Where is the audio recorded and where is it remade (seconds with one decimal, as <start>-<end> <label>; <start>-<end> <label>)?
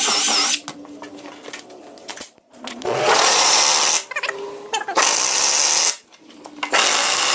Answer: 0.0-2.1 recorded; 2.1-3.6 remade; 3.6-7.3 recorded